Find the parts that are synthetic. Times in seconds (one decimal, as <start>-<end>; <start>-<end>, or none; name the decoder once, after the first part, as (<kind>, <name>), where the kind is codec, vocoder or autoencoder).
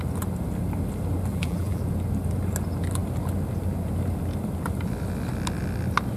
1.3-1.8 (vocoder, BigVGAN v2)